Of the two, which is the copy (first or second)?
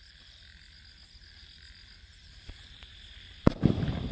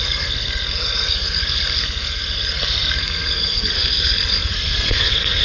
second